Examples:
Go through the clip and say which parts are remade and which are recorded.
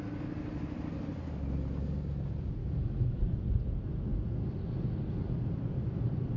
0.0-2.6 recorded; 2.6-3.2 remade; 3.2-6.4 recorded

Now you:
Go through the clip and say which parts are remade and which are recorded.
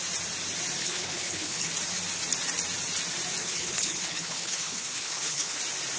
0.0-0.8 recorded; 0.8-1.7 remade; 1.7-3.4 recorded; 3.4-5.6 remade; 5.6-6.0 recorded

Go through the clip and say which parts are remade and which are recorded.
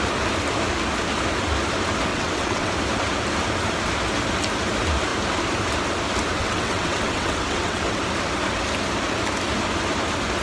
0.0-2.1 recorded; 2.1-2.7 remade; 2.7-6.4 recorded; 6.4-8.0 remade; 8.0-10.4 recorded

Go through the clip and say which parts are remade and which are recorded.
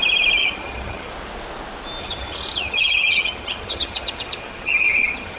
0.0-0.4 recorded; 0.4-1.1 remade; 1.1-2.0 recorded; 2.0-5.4 remade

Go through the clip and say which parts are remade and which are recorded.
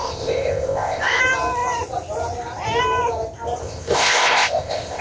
0.0-1.2 remade; 1.2-3.6 recorded; 3.6-5.0 remade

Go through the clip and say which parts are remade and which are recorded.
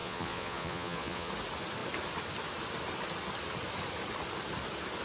0.0-1.3 remade; 1.3-5.0 recorded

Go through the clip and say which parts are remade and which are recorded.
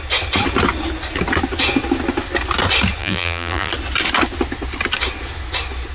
0.0-3.0 recorded; 3.0-3.7 remade; 3.7-5.9 recorded